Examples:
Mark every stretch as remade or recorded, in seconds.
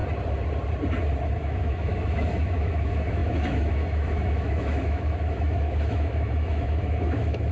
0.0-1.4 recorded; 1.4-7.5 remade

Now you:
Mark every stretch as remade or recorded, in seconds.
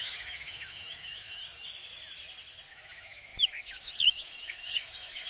0.0-1.4 remade; 1.4-2.7 recorded; 2.7-5.3 remade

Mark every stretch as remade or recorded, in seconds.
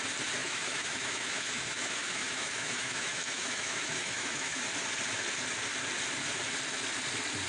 0.0-0.4 recorded; 0.4-4.6 remade; 4.6-7.5 recorded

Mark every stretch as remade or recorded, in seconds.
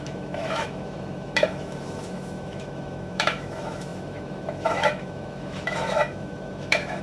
0.0-7.0 remade